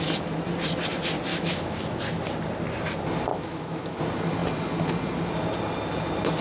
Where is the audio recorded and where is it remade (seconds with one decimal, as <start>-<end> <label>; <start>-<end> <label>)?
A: 0.0-1.3 recorded; 1.3-2.0 remade; 2.0-3.3 recorded; 3.3-4.0 remade; 4.0-6.4 recorded